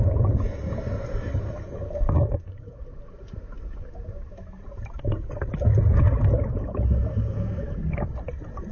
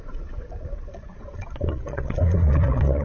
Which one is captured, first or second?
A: first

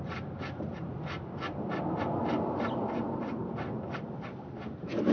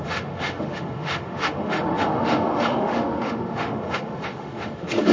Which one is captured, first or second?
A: first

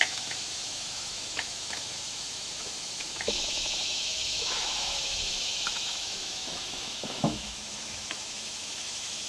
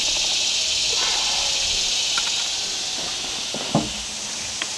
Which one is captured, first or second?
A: second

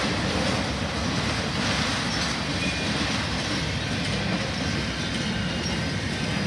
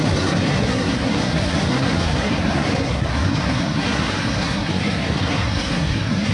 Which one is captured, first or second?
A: first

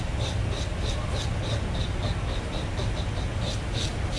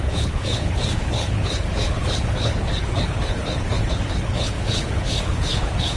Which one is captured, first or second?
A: first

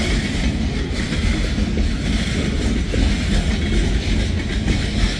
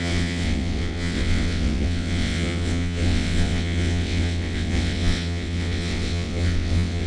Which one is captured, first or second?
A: first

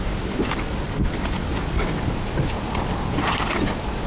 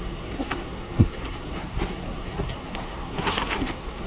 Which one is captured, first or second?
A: first